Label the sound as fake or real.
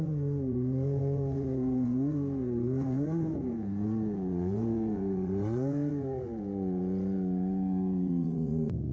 fake